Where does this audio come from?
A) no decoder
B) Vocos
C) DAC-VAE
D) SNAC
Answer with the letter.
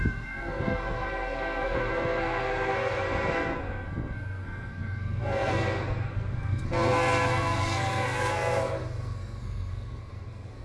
D